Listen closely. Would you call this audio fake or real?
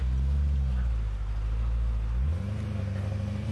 real